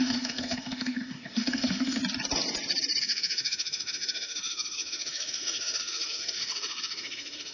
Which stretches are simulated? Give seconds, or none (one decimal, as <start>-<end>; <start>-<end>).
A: 0.0-2.0; 3.0-7.5